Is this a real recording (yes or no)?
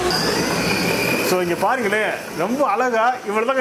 yes